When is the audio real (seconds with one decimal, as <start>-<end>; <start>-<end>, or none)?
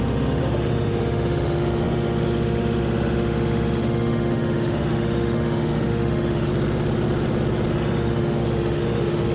6.5-7.7